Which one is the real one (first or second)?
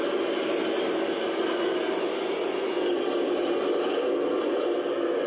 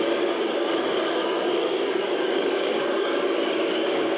first